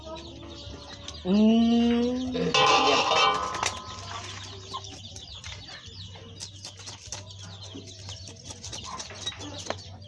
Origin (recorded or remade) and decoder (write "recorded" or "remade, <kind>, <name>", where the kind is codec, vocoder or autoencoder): recorded